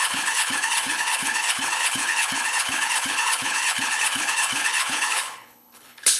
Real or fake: fake